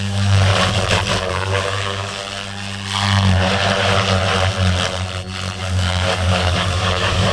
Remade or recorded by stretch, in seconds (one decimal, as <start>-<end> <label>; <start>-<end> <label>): 0.0-0.5 remade; 0.5-1.3 recorded; 1.3-2.2 remade; 2.2-5.6 recorded; 5.6-7.3 remade